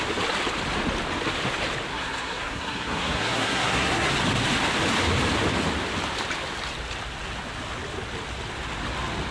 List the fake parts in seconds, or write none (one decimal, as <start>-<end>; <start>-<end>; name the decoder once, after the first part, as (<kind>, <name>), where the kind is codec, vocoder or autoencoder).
1.9-4.1 (codec, SNAC)